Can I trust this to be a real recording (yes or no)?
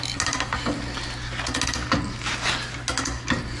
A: yes